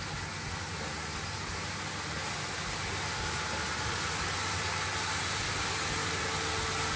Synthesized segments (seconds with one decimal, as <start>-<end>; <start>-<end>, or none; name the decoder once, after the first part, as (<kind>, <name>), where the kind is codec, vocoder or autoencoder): none